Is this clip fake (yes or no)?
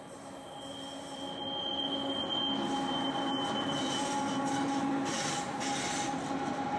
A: no